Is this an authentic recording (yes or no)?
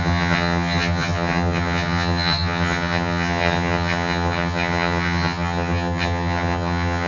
no